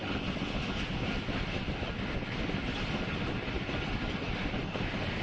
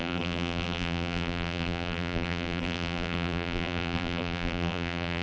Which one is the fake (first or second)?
second